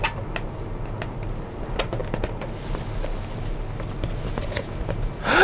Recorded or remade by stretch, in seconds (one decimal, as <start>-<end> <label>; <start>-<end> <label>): 0.0-5.4 recorded